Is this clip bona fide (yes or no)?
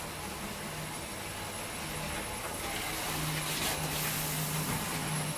yes